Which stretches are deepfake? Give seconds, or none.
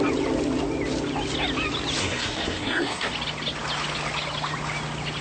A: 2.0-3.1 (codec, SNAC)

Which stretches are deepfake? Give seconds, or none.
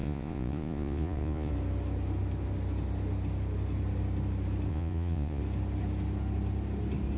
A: 0.0-1.5 (vocoder, Vocos); 4.7-5.4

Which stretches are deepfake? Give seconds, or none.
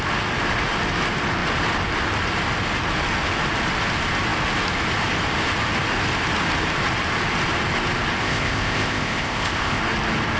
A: 8.2-9.8 (codec, ZipCodec)